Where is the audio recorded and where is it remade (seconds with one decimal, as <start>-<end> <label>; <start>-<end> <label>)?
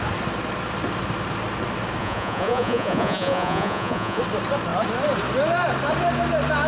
0.0-2.0 recorded; 2.0-4.2 remade; 4.2-6.7 recorded